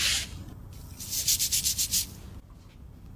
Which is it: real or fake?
real